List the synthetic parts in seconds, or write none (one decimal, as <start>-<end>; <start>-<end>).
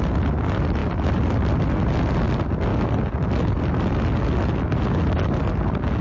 none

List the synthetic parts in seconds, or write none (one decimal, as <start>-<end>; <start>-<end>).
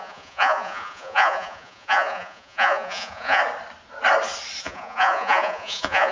0.0-3.4; 4.6-6.1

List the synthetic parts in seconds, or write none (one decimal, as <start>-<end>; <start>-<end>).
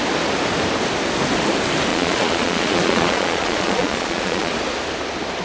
1.9-4.5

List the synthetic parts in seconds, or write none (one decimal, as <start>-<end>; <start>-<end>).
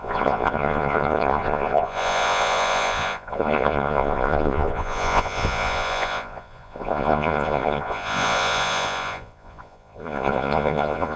0.0-11.2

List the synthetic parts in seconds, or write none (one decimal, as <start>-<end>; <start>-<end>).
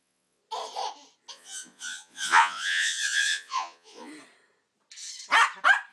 0.0-0.4; 1.3-4.1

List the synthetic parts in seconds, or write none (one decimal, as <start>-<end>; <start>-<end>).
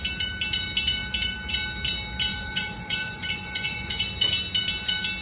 2.3-4.1